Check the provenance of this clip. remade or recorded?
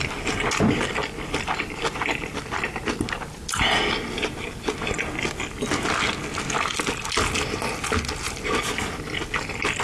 recorded